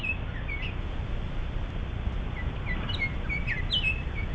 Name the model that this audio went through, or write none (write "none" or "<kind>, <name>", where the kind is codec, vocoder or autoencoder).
none